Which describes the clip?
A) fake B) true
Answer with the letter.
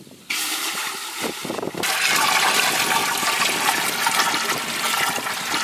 B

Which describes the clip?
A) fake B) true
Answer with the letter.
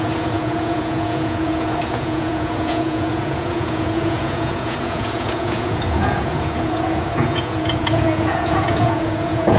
A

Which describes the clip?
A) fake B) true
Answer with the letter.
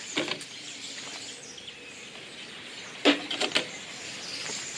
B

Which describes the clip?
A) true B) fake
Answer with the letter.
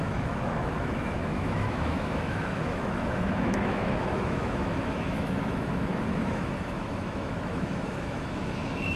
B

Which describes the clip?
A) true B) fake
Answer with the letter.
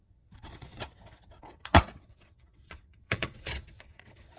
B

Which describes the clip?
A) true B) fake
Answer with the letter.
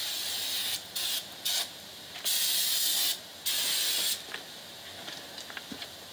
A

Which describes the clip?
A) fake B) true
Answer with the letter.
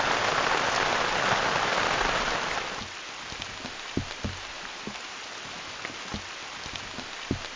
B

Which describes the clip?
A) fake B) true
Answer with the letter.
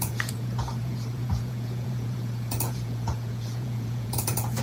A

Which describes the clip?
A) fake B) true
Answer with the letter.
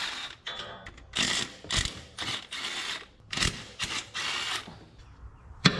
B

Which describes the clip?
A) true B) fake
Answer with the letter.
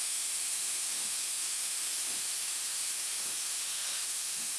B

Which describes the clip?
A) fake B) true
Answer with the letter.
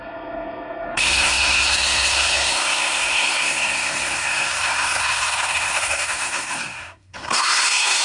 A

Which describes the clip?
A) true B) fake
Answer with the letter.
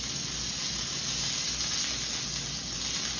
A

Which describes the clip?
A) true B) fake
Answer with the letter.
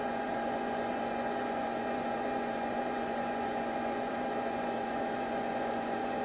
B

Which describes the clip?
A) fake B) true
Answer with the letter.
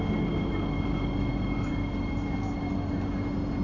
B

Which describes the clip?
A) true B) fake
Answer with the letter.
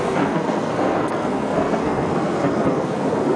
B